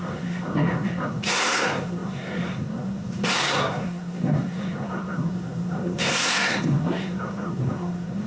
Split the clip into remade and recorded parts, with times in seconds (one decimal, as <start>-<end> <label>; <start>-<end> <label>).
0.0-8.3 remade